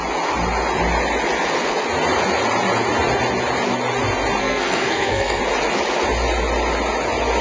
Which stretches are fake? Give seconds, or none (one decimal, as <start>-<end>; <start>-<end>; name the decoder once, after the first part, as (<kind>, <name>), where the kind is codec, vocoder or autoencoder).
4.4-5.4 (codec, SNAC)